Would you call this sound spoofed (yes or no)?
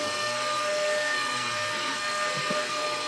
yes